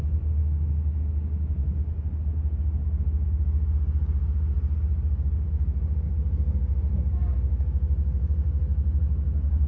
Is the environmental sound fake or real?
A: real